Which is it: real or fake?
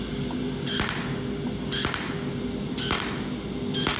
real